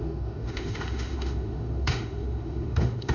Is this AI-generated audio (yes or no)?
yes